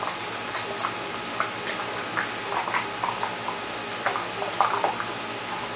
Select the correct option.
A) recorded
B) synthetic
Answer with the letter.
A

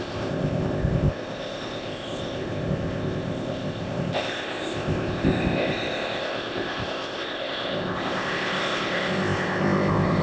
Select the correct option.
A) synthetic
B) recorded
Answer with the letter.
A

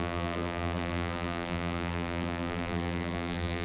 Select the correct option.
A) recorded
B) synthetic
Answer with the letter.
B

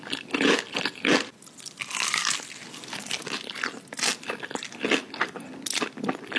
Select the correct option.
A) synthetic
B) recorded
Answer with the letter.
B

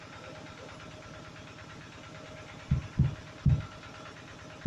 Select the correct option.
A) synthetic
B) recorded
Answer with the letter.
B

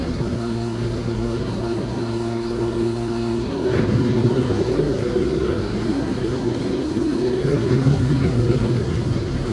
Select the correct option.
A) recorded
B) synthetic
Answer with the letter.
B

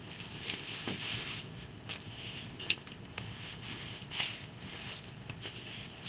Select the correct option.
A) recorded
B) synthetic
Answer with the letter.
B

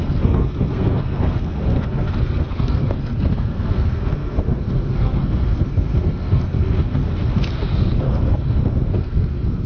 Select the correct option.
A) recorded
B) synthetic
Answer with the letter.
B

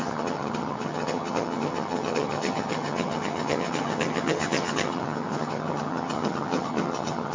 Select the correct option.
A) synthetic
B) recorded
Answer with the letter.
A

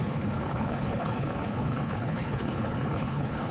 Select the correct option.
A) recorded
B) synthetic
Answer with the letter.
B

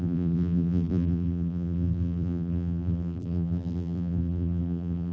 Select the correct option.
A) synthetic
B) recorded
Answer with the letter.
A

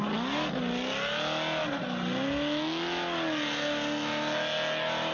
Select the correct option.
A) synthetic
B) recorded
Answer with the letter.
B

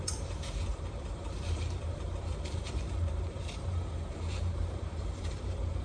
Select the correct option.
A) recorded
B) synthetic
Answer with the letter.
B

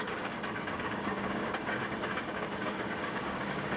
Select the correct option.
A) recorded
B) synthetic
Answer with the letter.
B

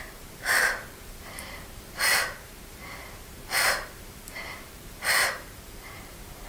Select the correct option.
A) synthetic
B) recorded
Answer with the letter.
A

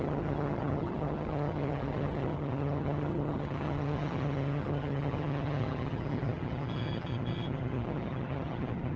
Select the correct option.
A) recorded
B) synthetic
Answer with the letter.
B